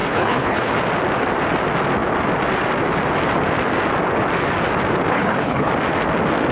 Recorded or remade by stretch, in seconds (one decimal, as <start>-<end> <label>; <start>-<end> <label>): 0.0-0.7 remade; 0.7-5.1 recorded; 5.1-5.7 remade; 5.7-6.5 recorded